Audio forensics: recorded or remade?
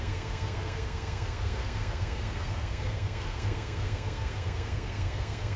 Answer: remade